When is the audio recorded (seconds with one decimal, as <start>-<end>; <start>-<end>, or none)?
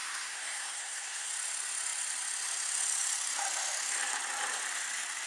1.3-5.3